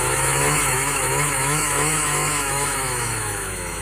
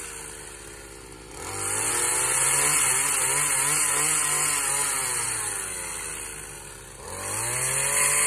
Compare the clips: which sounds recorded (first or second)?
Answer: second